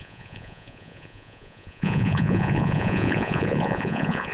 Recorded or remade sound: remade